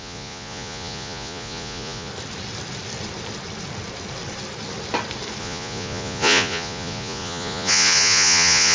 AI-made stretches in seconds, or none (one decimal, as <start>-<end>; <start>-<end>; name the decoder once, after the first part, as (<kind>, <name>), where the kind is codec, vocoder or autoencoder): 0.0-2.1 (vocoder, Vocos); 5.4-8.7